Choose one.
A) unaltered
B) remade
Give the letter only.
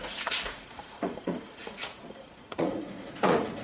B